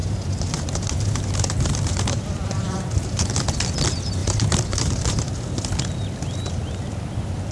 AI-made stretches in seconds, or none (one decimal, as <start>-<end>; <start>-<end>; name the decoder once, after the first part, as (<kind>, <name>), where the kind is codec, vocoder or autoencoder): 0.0-3.4 (vocoder, BigVGAN v2); 4.2-5.3